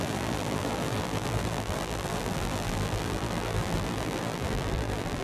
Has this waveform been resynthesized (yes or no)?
yes